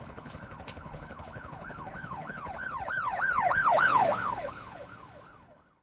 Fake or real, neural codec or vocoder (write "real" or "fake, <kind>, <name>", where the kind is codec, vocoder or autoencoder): fake, codec, HILCodec